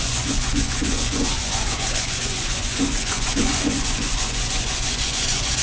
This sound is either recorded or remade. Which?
remade